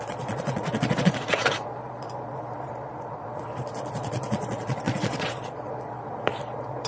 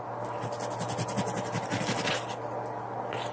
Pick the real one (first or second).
second